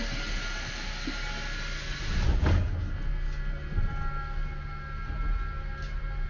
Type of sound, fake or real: real